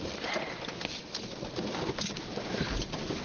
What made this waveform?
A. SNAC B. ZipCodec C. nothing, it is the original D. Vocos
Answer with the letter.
C